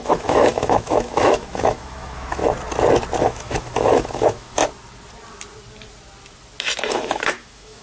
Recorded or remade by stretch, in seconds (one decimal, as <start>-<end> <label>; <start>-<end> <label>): 0.0-2.4 remade; 2.4-3.2 recorded; 3.2-4.6 remade; 4.6-6.9 recorded; 6.9-7.8 remade